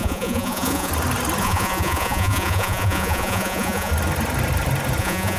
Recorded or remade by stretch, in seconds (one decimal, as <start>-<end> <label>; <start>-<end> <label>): 0.0-0.9 remade; 0.9-1.4 recorded; 1.4-3.9 remade; 3.9-5.0 recorded; 5.0-5.4 remade